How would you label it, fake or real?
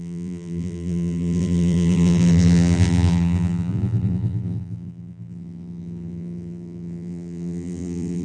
fake